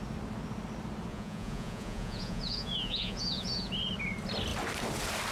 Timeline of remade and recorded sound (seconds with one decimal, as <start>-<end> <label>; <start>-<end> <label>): 0.0-1.1 recorded; 1.1-3.7 remade; 3.7-5.3 recorded